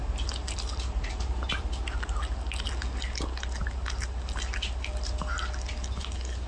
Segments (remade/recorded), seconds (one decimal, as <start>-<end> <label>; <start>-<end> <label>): 0.0-6.5 recorded